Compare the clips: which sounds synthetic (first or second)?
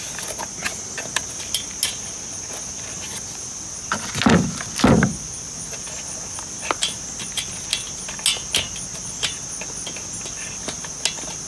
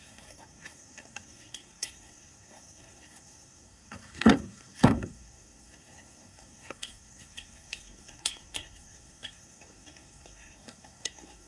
second